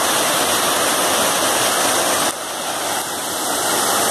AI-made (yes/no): no